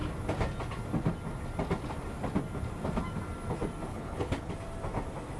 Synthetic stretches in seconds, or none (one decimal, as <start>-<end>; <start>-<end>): 3.9-4.5